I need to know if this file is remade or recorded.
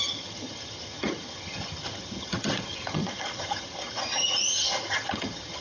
remade